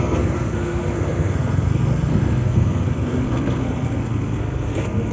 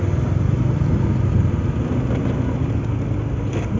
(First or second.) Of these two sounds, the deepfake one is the first